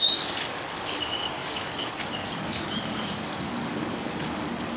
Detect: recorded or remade remade